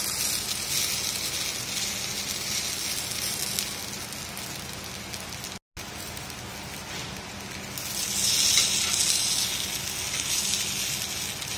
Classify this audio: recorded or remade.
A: recorded